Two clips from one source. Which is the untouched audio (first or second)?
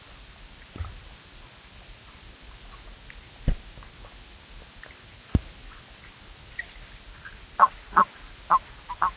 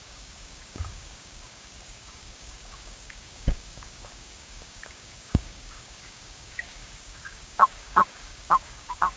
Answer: first